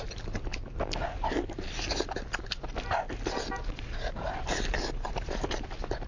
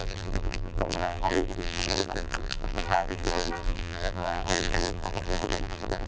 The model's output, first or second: second